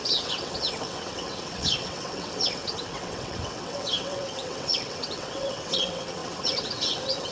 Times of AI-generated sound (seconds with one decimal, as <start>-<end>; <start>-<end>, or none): 0.0-7.3